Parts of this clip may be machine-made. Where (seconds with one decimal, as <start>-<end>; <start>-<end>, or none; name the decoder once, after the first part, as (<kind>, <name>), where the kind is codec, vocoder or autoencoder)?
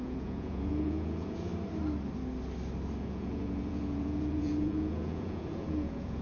0.0-1.5 (vocoder, Vocos); 3.0-6.2